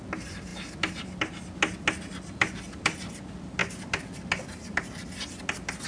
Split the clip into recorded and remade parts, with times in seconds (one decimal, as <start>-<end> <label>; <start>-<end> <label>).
0.0-5.9 recorded